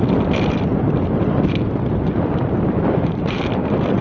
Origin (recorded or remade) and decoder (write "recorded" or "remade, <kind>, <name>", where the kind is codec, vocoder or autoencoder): recorded